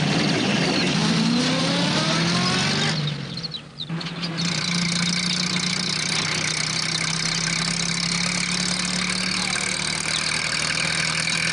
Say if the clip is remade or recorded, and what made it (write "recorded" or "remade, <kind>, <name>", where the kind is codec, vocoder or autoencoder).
recorded